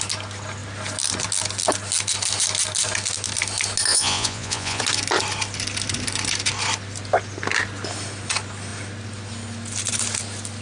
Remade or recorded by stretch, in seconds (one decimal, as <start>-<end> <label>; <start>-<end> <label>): 0.0-3.9 recorded; 3.9-4.8 remade; 4.8-10.6 recorded